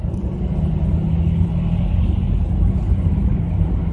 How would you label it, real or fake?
real